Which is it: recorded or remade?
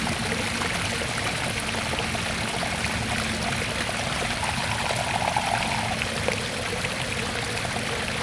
recorded